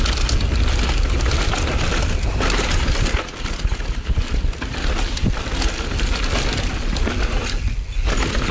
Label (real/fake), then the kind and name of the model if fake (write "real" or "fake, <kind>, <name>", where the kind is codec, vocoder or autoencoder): real